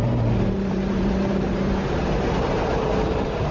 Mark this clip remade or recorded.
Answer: remade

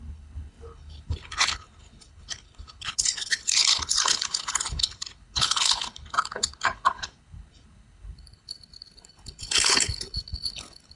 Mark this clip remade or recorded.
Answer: remade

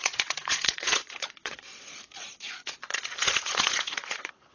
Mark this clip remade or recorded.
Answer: remade